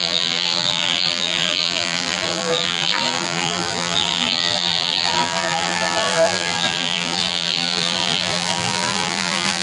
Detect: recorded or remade remade